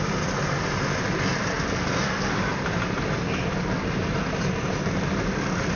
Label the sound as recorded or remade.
recorded